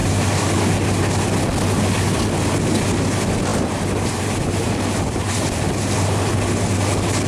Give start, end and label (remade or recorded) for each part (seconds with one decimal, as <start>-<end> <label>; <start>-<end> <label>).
0.0-3.5 recorded; 3.5-6.3 remade; 6.3-7.3 recorded